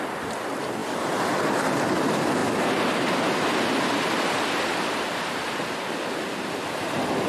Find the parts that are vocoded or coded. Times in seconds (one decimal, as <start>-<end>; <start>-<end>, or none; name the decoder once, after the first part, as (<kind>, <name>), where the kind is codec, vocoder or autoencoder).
0.8-1.6 (vocoder, BigVGAN v2)